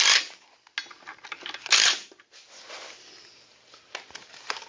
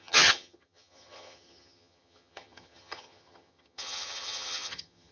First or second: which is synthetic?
second